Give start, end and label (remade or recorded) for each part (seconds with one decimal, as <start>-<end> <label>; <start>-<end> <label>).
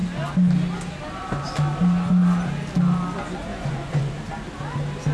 0.0-3.5 recorded; 3.5-4.1 remade; 4.1-5.1 recorded